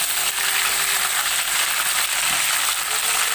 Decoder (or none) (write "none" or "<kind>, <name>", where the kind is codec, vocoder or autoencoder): none